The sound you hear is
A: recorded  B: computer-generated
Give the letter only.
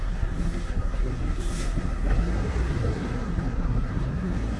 B